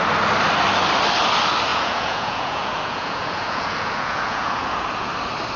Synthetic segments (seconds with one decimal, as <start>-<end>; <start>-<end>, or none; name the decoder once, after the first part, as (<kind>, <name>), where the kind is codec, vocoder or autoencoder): 1.7-5.1 (vocoder, Vocos)